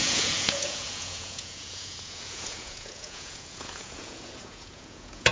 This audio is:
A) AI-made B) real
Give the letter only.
A